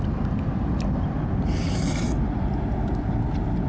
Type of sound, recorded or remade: recorded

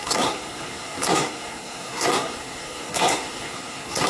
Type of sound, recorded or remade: remade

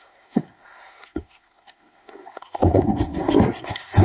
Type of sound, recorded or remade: remade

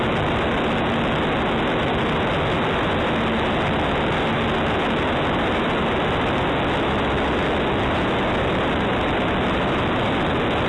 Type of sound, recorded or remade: recorded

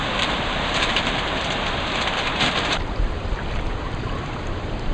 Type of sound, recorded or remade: remade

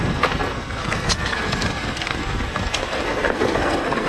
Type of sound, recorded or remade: remade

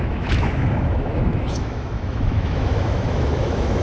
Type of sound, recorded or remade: remade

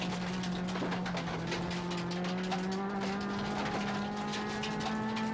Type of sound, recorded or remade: recorded